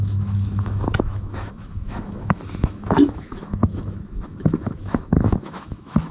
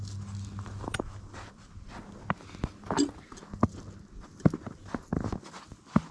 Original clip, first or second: second